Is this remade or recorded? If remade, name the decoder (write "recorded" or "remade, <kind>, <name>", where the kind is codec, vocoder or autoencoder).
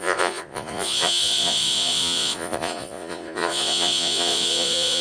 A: remade, vocoder, Vocos